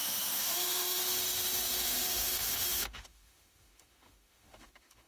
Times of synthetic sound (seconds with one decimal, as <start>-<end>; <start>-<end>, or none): 0.0-1.0; 1.8-5.1